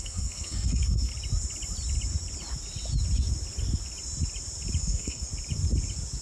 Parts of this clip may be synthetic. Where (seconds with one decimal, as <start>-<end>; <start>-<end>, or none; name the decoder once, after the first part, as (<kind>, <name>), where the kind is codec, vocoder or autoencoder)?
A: 0.0-1.1 (codec, SNAC); 4.8-5.3